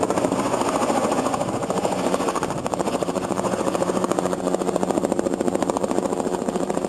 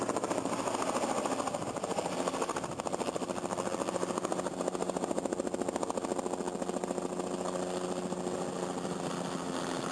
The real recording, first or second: second